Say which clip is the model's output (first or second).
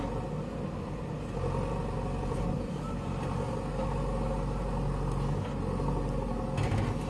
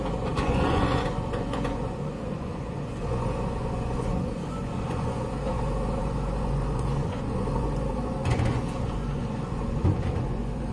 second